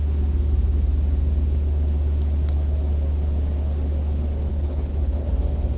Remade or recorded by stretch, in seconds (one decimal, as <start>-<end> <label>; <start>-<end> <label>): 0.0-4.5 recorded; 4.5-5.3 remade; 5.3-5.8 recorded